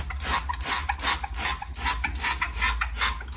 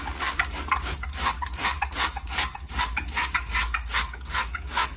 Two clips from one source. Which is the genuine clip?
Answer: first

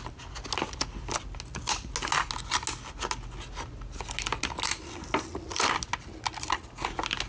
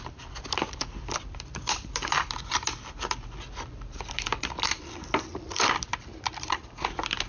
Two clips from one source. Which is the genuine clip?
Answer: first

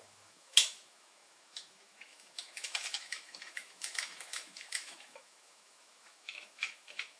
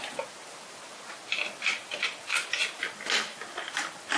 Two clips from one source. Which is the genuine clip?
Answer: second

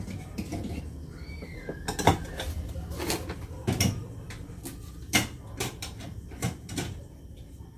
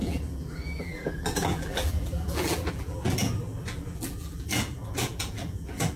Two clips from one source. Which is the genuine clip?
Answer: first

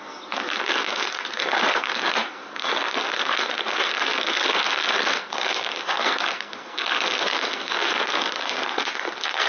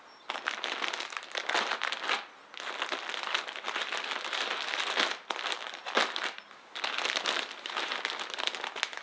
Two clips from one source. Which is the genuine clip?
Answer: second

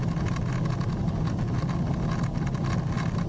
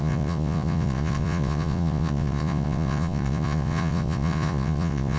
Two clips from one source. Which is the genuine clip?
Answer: first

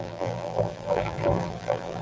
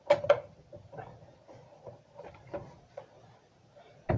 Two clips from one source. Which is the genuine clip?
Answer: second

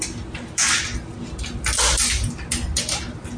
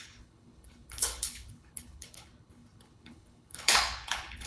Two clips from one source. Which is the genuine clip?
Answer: first